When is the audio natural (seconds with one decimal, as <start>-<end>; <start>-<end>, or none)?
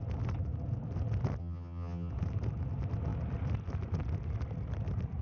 0.0-1.4; 2.1-5.2